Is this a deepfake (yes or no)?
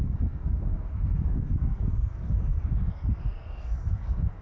yes